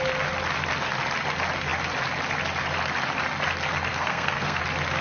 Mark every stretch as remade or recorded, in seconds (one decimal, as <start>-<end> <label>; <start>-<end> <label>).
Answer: 0.0-3.9 recorded; 3.9-4.6 remade; 4.6-5.0 recorded